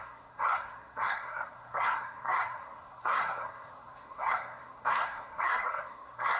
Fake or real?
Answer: fake